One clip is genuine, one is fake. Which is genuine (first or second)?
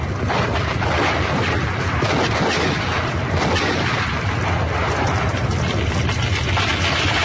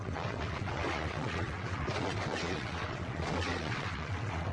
first